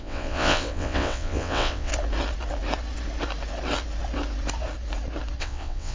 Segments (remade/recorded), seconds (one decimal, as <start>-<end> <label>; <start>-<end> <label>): 0.0-1.9 remade; 1.9-5.4 recorded; 5.4-5.9 remade